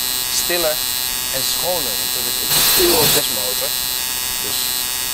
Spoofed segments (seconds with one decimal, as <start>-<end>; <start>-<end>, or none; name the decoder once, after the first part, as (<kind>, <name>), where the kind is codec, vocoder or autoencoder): 2.5-3.2 (autoencoder, DAC-VAE)